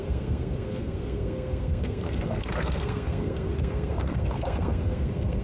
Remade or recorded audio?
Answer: remade